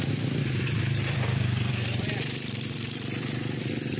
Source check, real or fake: fake